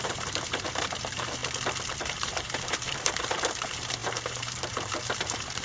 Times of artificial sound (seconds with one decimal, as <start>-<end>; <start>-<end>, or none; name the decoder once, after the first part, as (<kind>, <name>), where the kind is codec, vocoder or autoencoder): 0.0-1.4 (vocoder, BigVGAN v2); 2.0-5.6